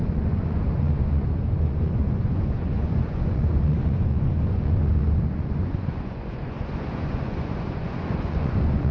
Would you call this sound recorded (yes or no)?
no